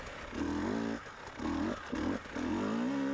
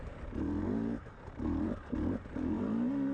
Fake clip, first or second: second